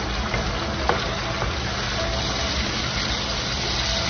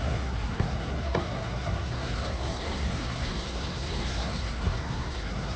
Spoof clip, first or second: second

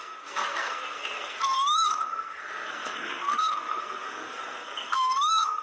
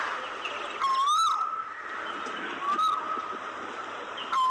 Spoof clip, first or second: first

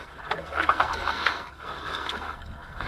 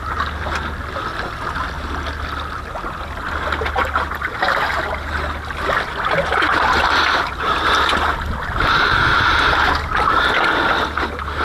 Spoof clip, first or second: first